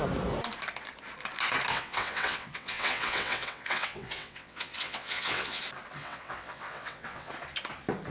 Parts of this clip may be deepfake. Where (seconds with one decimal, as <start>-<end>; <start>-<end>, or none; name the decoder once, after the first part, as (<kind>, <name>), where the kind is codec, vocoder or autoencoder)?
1.7-5.6 (vocoder, WaveNeXt); 6.0-7.3